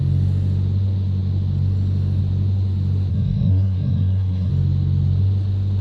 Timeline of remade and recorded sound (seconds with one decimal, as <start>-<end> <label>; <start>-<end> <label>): 0.0-3.1 recorded; 3.1-4.5 remade; 4.5-5.8 recorded